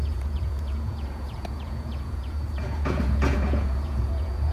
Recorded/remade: remade